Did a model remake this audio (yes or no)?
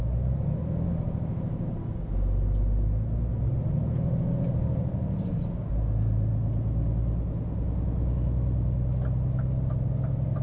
no